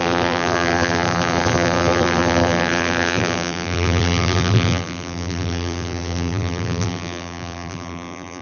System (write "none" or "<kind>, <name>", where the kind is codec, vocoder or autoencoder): vocoder, BigVGAN v2